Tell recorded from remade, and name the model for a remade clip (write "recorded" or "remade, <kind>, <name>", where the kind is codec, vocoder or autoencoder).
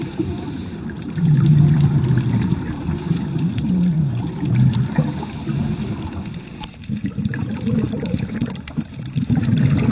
remade, vocoder, BigVGAN v2